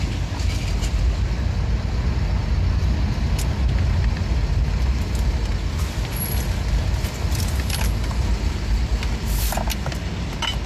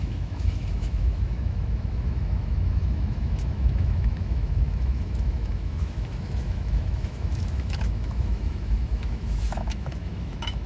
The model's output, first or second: second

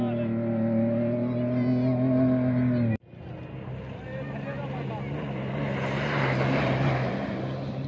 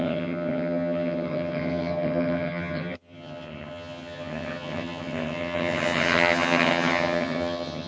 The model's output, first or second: second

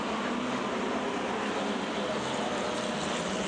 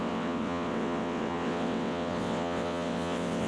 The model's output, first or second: second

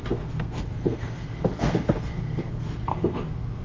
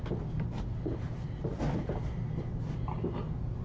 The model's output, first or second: first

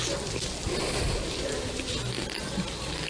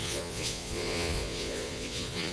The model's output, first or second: second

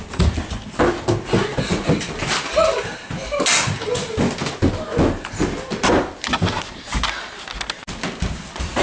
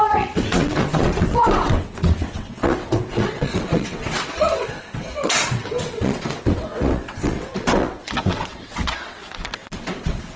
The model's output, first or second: second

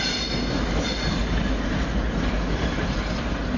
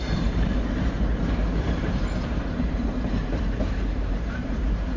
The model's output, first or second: second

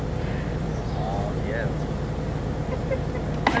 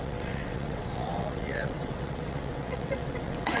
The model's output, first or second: second